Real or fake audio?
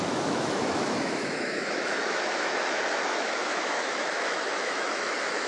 fake